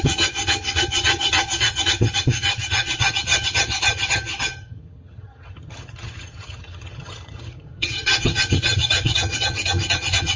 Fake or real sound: fake